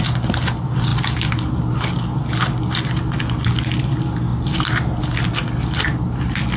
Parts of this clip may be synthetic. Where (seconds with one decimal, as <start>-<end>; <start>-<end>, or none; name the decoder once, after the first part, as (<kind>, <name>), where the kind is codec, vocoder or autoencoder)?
none